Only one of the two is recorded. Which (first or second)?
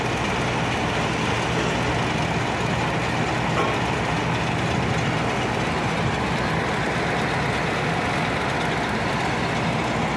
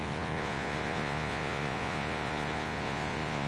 first